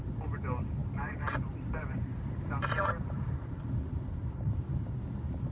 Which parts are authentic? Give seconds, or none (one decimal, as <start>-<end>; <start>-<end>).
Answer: 0.0-0.8; 3.6-4.2; 5.0-5.5